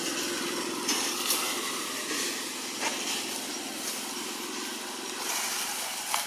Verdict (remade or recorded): recorded